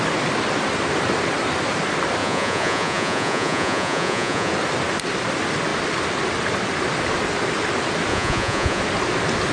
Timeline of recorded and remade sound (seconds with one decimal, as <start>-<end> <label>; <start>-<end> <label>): 0.0-2.2 recorded; 2.2-4.5 remade; 4.5-8.1 recorded; 8.1-8.8 remade; 8.8-9.5 recorded